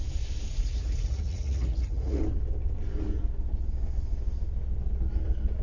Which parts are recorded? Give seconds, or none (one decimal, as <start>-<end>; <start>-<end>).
0.0-0.5; 2.2-5.6